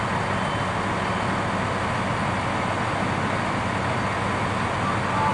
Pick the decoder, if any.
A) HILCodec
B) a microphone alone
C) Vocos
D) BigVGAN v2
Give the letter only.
B